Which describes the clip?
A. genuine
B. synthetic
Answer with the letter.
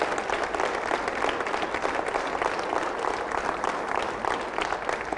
A